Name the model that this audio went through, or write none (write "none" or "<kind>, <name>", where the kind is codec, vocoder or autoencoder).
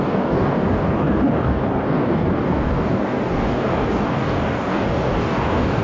codec, DAC